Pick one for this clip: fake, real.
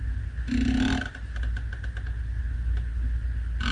real